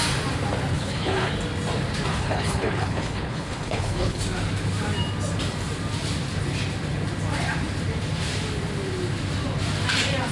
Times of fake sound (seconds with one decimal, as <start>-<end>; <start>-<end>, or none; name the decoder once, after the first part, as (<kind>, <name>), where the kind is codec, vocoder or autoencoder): 0.7-1.3 (codec, HILCodec); 2.1-4.2